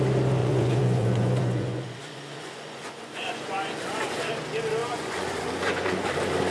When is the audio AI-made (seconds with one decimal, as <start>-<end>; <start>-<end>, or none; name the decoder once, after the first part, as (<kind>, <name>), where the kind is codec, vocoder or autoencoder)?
0.4-4.3 (vocoder, Vocos); 4.8-6.1